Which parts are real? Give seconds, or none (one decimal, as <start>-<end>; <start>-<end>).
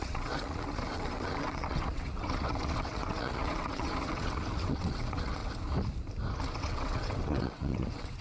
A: 5.4-6.6